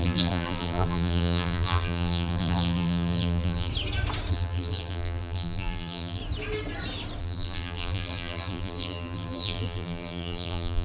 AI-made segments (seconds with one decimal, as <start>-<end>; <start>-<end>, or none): 0.0-3.7; 4.3-6.2; 7.2-10.8